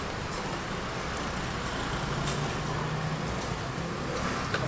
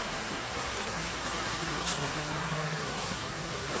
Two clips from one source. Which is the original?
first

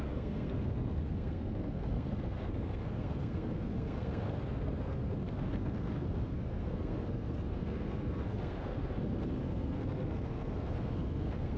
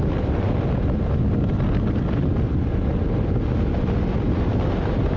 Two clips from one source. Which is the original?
second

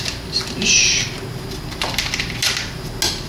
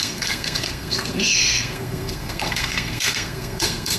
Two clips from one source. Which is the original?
first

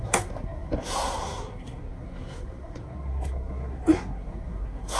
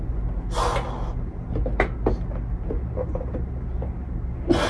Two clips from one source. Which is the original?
second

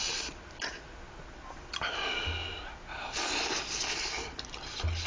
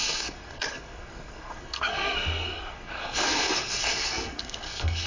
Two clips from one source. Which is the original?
first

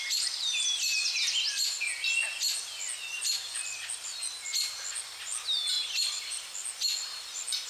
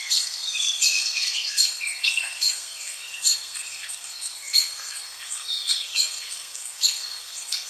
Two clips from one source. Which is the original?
first